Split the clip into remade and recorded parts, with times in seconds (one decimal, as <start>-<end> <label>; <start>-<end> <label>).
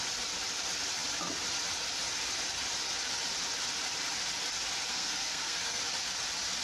0.0-4.9 recorded; 4.9-5.8 remade; 5.8-6.6 recorded